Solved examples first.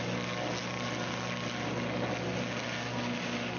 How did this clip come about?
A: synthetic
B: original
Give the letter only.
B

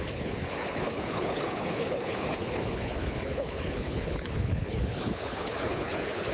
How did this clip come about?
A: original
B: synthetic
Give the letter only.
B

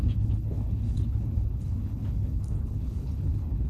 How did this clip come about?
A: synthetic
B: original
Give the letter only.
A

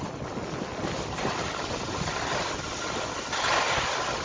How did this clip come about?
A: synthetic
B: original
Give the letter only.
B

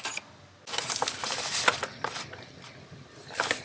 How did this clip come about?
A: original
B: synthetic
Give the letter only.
A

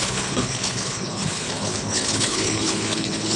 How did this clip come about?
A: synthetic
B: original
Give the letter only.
A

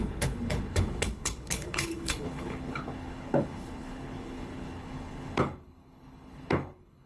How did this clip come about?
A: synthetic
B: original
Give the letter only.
A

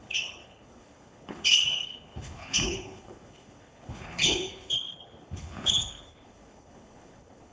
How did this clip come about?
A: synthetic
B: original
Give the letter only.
A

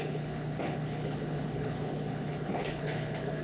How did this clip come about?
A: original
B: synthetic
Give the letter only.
B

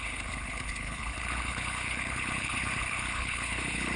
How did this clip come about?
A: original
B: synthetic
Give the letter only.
B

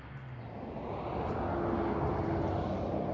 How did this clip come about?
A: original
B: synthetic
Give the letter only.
A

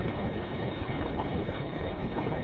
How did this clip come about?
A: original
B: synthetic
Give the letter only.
B